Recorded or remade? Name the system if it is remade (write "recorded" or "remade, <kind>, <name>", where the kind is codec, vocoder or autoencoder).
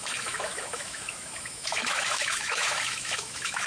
remade, autoencoder, DAC-VAE